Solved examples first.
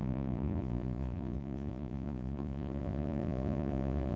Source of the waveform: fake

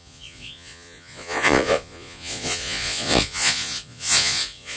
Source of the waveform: fake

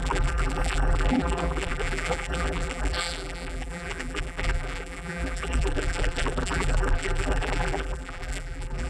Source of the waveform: fake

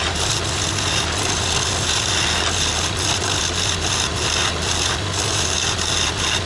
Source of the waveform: real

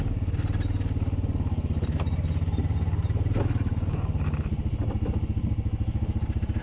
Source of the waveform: real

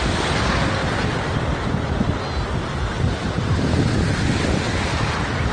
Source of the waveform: real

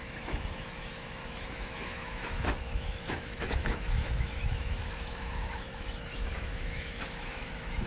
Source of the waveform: fake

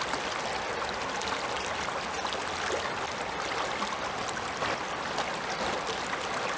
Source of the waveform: real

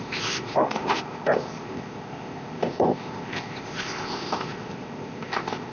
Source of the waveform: fake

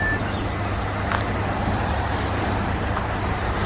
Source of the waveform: real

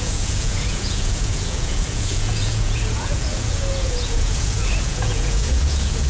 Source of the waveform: fake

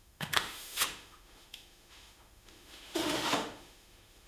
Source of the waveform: fake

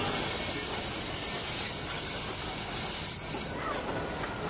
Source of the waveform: real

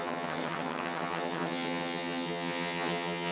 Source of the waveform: fake